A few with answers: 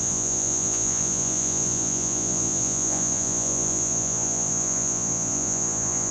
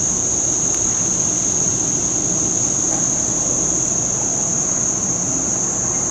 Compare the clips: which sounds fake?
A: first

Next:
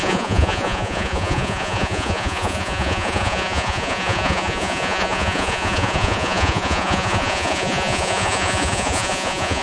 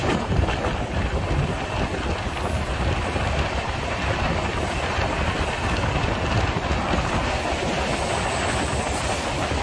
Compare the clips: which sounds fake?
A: first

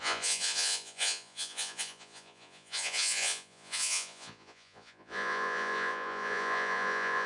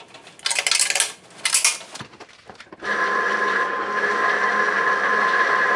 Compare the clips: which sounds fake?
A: first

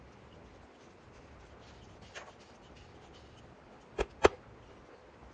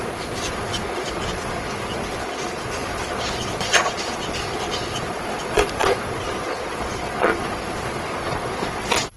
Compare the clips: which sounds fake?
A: second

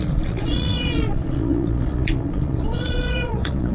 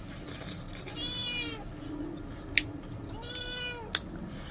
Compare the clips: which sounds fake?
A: first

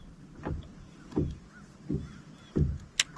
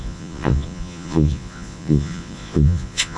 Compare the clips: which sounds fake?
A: second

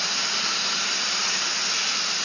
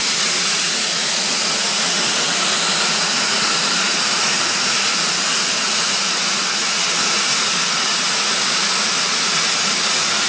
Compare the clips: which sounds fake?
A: second